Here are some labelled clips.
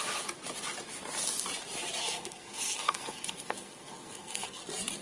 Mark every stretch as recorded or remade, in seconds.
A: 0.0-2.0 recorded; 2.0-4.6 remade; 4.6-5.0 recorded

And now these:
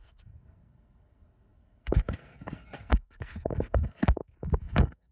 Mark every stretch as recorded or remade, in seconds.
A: 0.0-5.1 remade

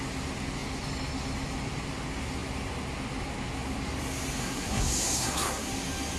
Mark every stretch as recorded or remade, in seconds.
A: 0.0-4.4 recorded; 4.4-5.7 remade; 5.7-6.2 recorded

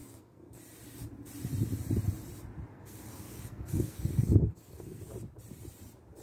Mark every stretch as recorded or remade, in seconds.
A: 0.0-0.6 remade; 0.6-2.7 recorded; 2.7-5.0 remade; 5.0-6.2 recorded

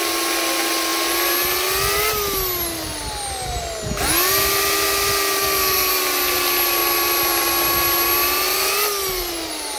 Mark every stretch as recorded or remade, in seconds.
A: 0.0-5.4 recorded; 5.4-5.9 remade; 5.9-9.8 recorded

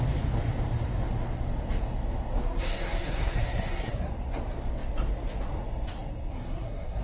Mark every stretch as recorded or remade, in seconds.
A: 0.0-2.4 recorded; 2.4-4.1 remade; 4.1-6.3 recorded; 6.3-7.0 remade